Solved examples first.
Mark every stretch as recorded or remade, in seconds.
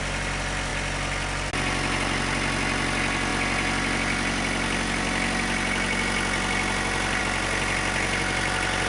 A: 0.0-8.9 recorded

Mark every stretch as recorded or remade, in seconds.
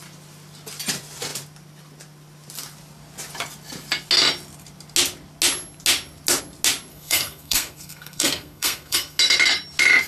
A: 0.0-6.9 recorded; 6.9-9.2 remade; 9.2-10.1 recorded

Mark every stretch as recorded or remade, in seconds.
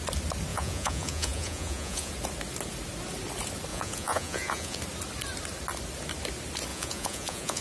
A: 0.0-0.5 recorded; 0.5-2.1 remade; 2.1-3.7 recorded; 3.7-4.8 remade; 4.8-6.7 recorded; 6.7-7.6 remade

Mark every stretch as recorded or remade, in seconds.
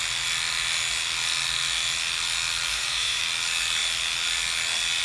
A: 0.0-2.7 recorded; 2.7-3.2 remade; 3.2-5.0 recorded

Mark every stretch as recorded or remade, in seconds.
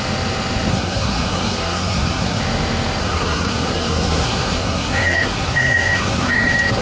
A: 0.0-0.7 recorded; 0.7-2.4 remade; 2.4-3.0 recorded; 3.0-6.8 remade